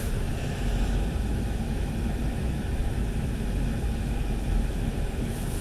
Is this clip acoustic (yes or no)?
no